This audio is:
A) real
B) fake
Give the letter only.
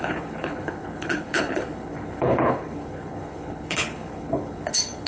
B